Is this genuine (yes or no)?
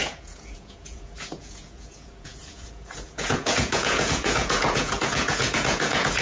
no